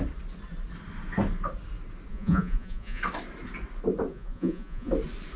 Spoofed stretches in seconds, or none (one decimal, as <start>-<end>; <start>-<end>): 2.1-3.0; 4.1-4.9